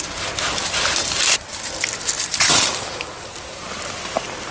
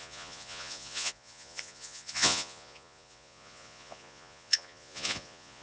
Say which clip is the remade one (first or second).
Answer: second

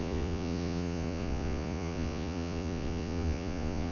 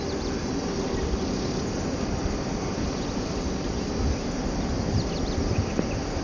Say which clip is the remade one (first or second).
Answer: first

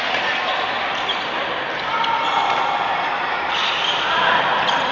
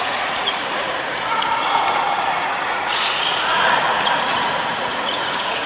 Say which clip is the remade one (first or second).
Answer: second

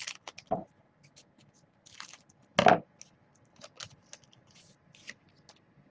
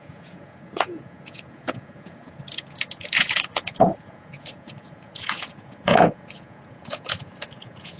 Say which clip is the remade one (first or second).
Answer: second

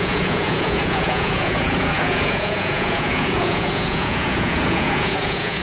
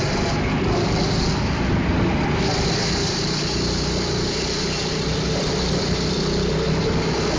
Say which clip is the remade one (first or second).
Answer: first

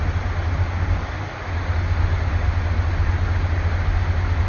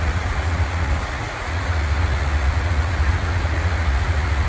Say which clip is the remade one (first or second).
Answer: second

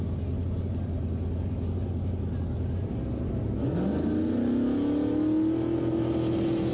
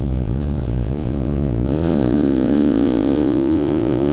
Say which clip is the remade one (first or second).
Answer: second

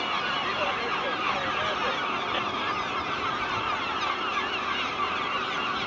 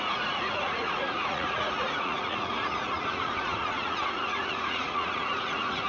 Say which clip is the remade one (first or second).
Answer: second